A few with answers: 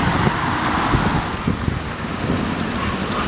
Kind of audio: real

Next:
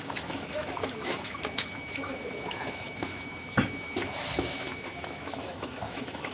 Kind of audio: fake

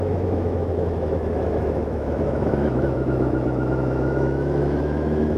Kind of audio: fake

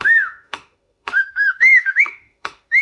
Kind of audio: fake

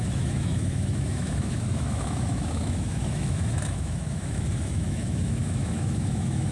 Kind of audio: fake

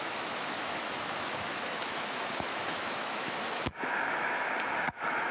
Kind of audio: fake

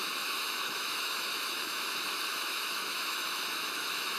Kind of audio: fake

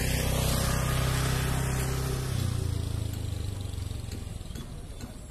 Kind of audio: real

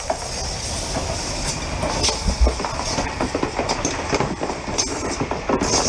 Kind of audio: real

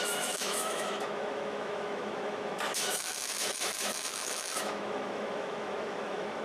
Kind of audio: fake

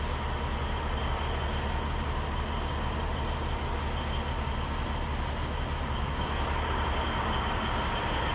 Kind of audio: real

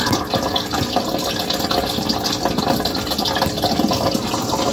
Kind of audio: real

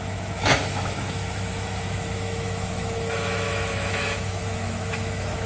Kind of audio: fake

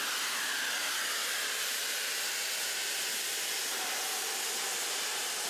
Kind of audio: real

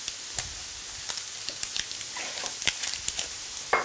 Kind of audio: real